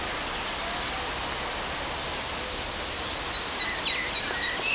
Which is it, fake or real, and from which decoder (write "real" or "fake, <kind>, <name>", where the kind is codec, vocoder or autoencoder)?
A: real